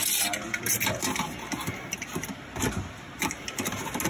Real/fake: real